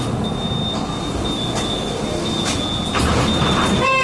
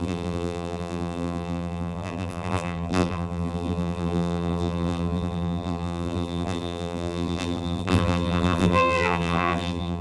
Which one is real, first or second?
first